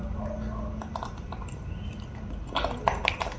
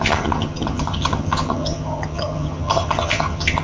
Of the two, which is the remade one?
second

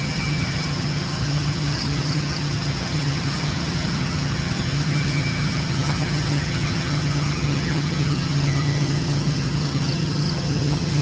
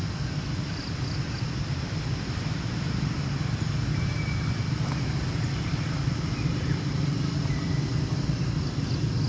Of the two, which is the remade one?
first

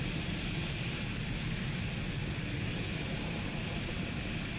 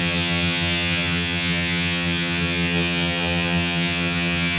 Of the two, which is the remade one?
second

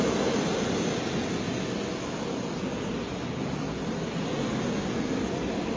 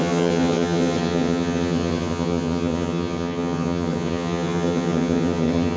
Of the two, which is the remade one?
second